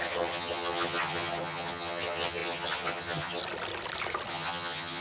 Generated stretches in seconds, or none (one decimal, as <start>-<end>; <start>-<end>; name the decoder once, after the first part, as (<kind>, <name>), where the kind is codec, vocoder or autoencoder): 0.0-3.4 (vocoder, HiFi-GAN); 4.3-5.0